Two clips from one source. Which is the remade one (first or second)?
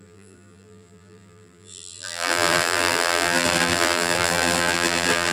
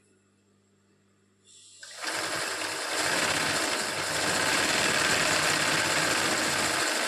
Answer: first